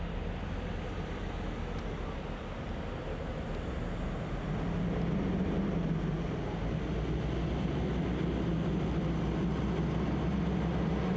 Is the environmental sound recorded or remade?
recorded